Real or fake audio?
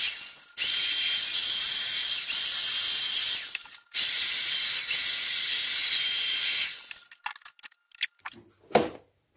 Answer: real